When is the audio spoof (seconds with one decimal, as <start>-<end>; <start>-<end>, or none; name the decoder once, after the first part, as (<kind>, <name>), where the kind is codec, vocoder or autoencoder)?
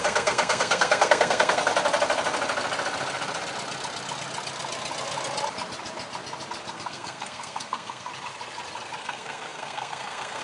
0.0-1.7 (codec, SNAC); 6.7-8.1; 9.0-10.4